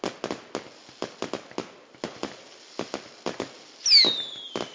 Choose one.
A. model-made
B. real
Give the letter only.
B